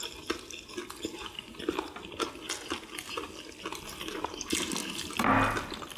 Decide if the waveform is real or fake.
real